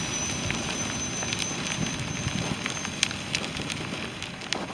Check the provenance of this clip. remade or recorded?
remade